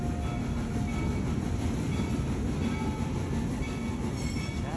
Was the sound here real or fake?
real